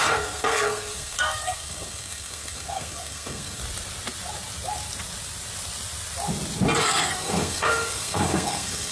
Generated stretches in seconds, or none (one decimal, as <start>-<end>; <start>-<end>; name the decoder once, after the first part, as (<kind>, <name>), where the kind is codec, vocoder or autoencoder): 0.0-3.6 (codec, SNAC); 6.8-8.9